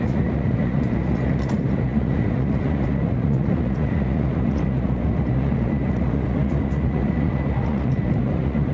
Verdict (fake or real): fake